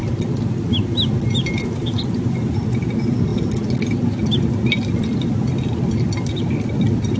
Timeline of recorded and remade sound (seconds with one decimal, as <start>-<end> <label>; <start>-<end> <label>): 0.0-7.2 recorded